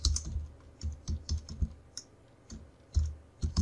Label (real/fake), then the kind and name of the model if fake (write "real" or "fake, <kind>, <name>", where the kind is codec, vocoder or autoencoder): real